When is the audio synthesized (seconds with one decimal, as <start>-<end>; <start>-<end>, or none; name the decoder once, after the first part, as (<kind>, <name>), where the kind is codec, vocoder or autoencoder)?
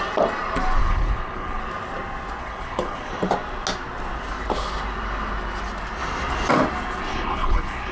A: 0.8-1.6 (codec, HILCodec); 2.4-3.1; 7.1-7.9